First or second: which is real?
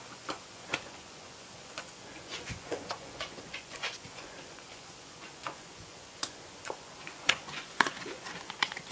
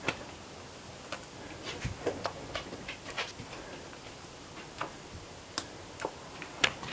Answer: second